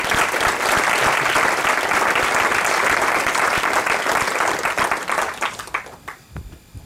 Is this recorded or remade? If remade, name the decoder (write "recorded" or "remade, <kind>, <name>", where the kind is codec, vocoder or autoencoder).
recorded